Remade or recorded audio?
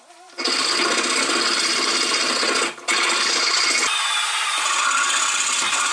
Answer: recorded